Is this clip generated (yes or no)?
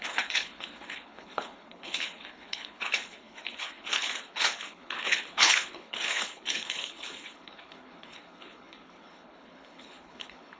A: yes